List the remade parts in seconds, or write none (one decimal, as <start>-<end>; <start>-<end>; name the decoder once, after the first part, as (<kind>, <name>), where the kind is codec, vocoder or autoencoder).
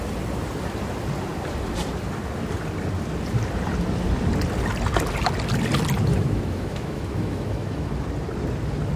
6.1-7.9 (autoencoder, DAC-VAE)